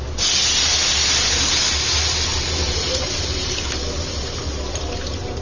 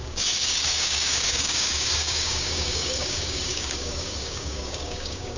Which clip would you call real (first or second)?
first